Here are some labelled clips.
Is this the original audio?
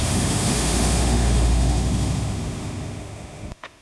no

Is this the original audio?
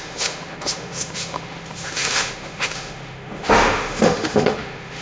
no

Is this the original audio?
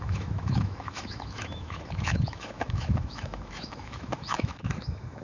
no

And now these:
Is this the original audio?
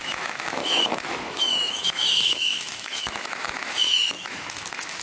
no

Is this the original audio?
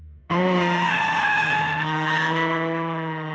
no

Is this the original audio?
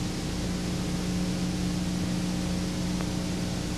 yes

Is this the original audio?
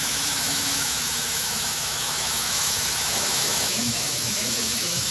no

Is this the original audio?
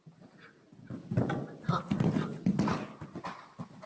yes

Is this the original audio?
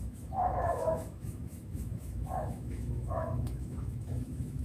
no